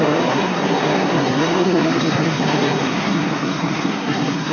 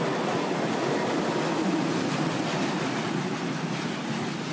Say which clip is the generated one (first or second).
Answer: first